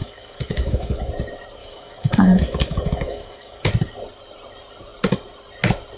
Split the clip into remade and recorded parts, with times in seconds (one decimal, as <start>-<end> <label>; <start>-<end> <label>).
0.0-1.1 remade; 1.1-1.6 recorded; 1.6-3.7 remade; 3.7-6.0 recorded